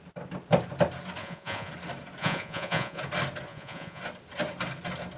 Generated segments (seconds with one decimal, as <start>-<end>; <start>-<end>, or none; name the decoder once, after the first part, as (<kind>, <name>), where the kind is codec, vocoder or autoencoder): 1.2-1.7 (vocoder, Vocos); 2.2-3.0; 3.5-4.0